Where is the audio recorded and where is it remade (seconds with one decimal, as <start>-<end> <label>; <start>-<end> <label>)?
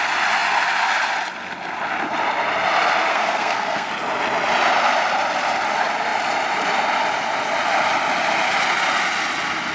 0.0-3.1 recorded; 3.1-3.9 remade; 3.9-9.7 recorded